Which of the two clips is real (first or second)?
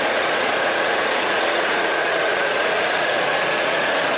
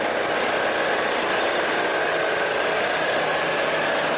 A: second